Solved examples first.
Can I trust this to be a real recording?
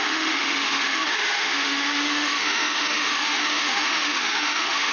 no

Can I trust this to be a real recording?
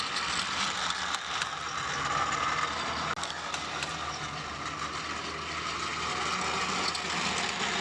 yes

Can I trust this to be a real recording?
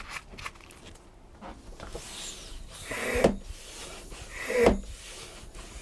yes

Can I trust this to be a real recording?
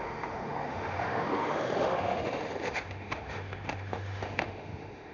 no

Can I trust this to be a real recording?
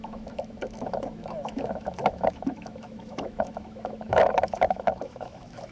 no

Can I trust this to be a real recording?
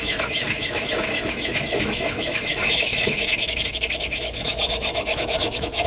no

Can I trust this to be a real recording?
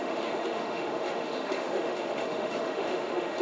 no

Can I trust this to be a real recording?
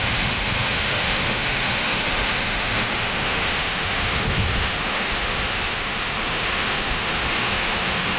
no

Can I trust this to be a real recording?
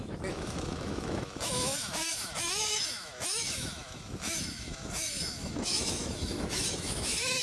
no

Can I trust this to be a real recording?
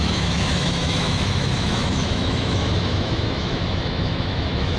no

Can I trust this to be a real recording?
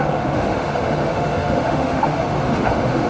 no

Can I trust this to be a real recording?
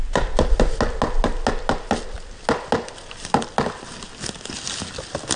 yes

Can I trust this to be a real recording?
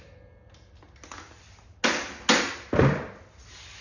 yes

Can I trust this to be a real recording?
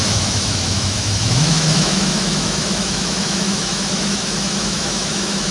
no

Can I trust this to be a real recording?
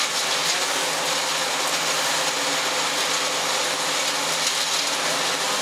yes